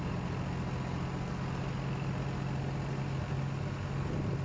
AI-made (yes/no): no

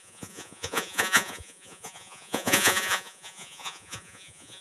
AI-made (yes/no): yes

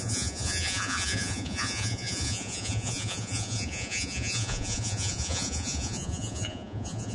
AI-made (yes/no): yes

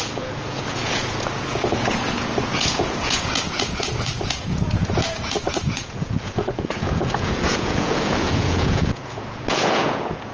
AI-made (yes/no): yes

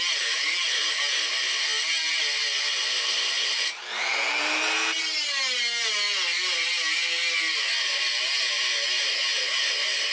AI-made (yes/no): no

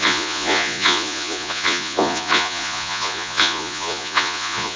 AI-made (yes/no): yes